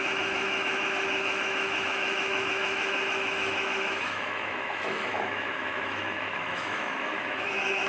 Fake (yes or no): yes